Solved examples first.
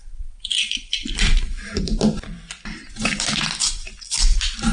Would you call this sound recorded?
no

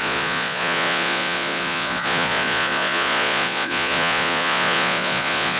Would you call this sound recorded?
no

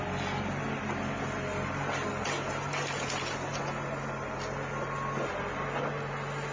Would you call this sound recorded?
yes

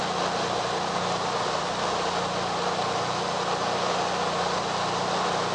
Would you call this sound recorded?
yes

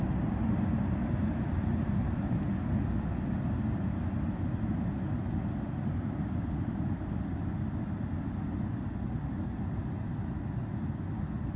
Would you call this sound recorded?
yes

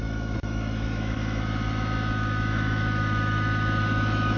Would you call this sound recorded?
no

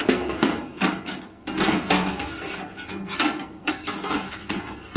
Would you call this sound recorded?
no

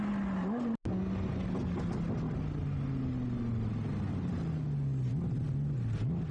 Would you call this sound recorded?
yes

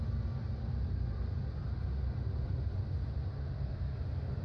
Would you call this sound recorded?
yes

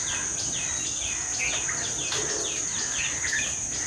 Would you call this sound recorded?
yes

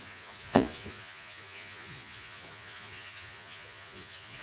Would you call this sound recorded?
no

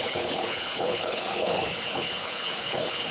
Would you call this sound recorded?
no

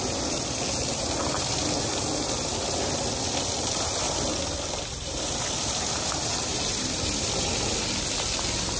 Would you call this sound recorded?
yes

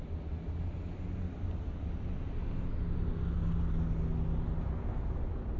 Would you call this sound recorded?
yes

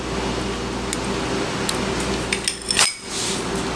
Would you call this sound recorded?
yes